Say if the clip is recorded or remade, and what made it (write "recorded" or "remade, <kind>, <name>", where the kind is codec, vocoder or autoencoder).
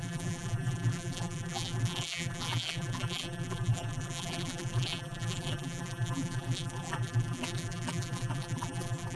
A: remade, vocoder, BigVGAN v2